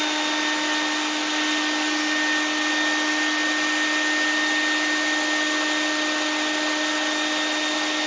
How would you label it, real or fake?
real